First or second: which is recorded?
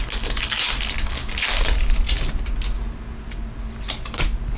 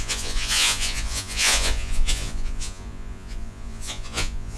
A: first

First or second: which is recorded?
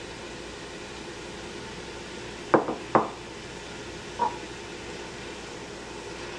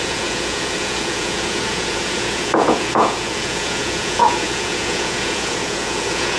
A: first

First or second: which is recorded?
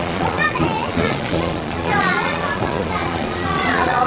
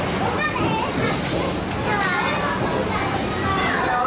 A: second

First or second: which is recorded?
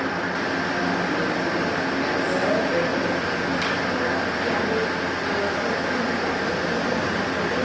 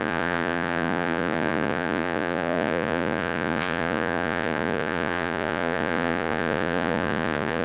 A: first